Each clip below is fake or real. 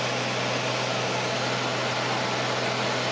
real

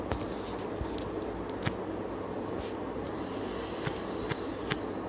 real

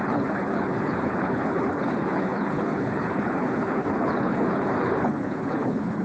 fake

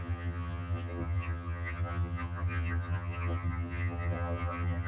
fake